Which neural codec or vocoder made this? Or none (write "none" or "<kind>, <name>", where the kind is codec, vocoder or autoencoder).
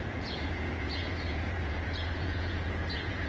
vocoder, Vocos